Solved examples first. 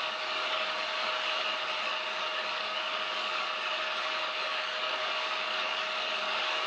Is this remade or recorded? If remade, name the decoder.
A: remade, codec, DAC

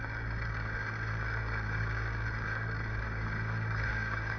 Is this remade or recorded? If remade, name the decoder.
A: remade, codec, DAC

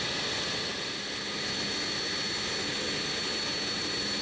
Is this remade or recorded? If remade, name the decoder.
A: recorded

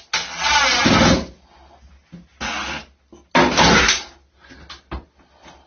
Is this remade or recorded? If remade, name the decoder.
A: recorded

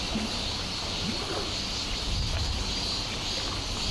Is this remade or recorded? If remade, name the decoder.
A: recorded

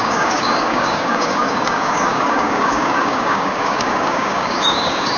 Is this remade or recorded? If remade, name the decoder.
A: remade, codec, DAC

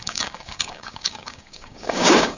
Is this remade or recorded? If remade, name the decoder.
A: remade, codec, DAC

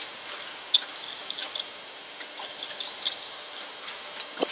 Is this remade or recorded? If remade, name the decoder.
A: recorded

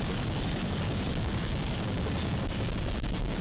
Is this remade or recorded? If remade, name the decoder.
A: remade, codec, DAC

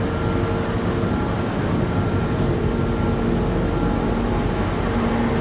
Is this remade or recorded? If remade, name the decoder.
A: recorded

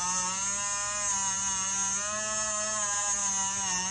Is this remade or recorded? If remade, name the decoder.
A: recorded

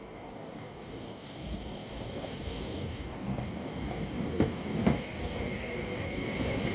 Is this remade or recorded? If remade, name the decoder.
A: remade, codec, DAC